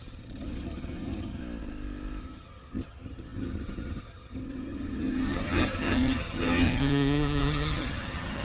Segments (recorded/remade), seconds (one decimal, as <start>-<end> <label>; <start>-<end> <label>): 0.0-1.4 remade; 1.4-2.2 recorded; 2.2-8.4 remade